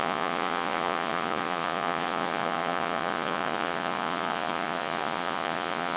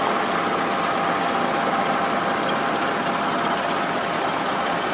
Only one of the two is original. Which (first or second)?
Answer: second